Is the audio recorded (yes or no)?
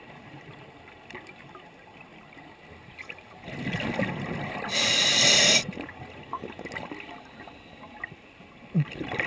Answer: yes